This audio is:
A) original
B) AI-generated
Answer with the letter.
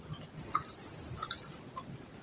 A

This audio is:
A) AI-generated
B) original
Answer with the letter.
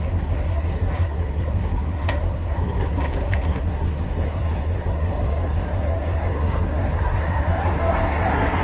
A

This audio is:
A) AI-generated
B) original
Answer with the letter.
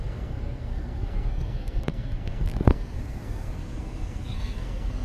A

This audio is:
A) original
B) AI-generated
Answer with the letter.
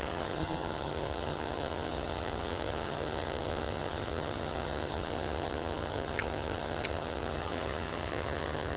B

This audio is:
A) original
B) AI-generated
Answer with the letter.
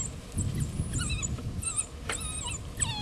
A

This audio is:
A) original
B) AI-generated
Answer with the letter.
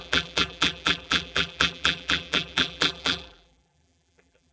B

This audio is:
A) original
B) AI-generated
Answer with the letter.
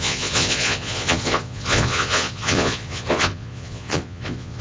B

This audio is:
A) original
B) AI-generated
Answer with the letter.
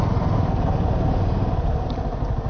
A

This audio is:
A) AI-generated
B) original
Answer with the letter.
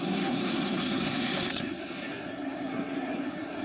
A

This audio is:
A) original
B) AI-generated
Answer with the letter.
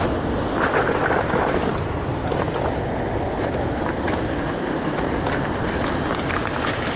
A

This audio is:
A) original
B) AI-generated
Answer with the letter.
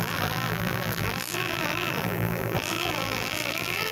B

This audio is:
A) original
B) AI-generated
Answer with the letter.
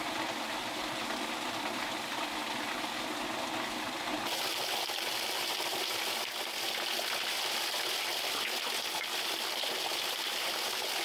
A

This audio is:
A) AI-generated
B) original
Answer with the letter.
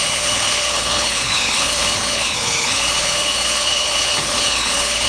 A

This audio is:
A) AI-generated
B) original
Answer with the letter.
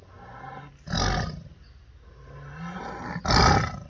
B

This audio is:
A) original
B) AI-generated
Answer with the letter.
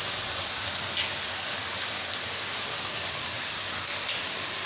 A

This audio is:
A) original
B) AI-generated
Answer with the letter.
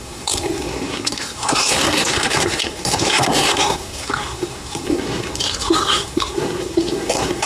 B